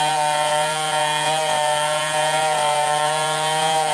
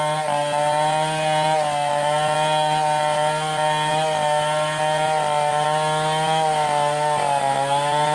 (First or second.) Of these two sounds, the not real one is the first